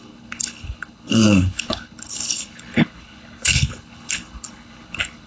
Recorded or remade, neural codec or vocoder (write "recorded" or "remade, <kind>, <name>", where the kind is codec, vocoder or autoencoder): remade, codec, HILCodec